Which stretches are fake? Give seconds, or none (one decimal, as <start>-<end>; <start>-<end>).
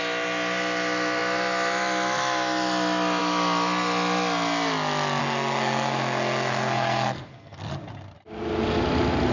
5.2-7.7